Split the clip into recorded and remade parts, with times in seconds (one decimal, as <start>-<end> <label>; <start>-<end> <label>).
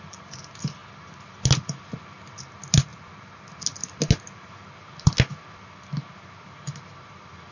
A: 0.0-7.5 recorded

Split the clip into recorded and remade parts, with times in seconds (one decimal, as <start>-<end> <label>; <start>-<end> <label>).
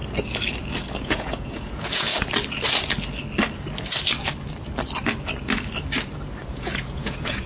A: 0.0-1.0 recorded; 1.0-2.1 remade; 2.1-6.5 recorded; 6.5-7.5 remade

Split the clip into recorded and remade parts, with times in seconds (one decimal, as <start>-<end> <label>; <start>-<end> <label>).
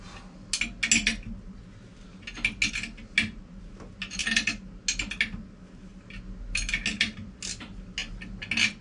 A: 0.0-8.8 recorded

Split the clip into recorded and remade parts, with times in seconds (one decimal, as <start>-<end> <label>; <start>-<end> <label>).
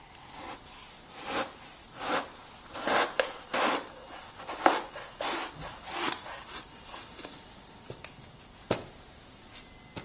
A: 0.0-10.0 recorded